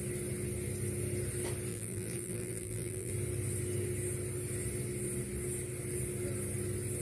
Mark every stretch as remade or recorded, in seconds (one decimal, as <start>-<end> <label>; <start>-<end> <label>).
0.0-1.7 recorded; 1.7-3.1 remade; 3.1-7.0 recorded